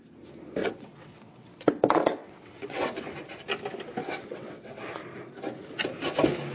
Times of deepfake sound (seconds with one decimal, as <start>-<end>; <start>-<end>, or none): 0.6-3.1; 4.0-4.8